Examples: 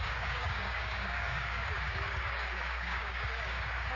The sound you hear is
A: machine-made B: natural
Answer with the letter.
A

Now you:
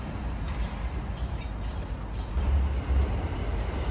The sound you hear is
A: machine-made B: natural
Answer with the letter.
B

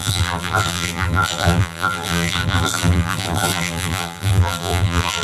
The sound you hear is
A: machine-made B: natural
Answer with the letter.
A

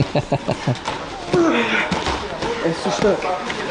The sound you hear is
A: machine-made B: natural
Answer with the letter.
B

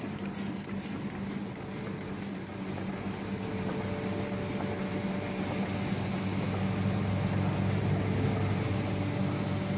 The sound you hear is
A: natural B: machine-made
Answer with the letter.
A